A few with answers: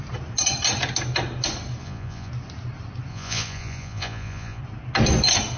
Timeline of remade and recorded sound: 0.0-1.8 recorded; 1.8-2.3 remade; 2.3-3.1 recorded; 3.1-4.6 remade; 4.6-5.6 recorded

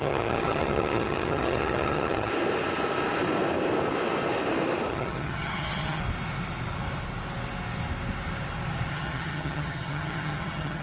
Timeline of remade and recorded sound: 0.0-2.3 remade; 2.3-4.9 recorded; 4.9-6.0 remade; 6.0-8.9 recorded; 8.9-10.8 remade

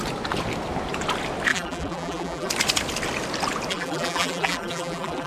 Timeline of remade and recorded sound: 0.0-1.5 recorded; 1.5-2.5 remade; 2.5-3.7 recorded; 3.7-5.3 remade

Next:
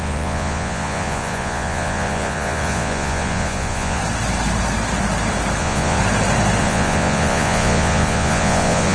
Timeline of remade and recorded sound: 0.0-4.0 remade; 4.0-5.6 recorded; 5.6-6.0 remade; 6.0-6.6 recorded; 6.6-8.9 remade